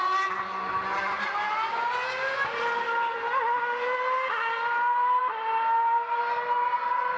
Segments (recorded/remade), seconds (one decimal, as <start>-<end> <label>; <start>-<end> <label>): 0.0-7.2 recorded